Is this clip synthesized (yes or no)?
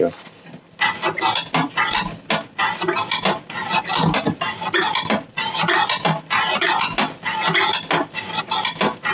no